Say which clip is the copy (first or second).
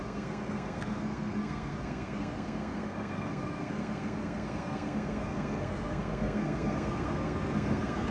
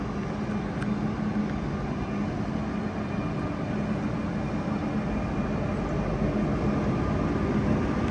first